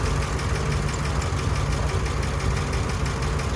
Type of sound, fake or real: real